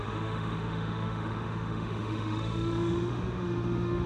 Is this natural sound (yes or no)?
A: no